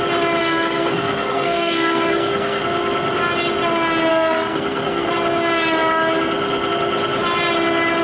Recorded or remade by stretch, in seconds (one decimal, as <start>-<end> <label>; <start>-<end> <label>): 0.0-0.4 recorded; 0.4-2.6 remade; 2.6-4.1 recorded; 4.1-5.1 remade; 5.1-8.0 recorded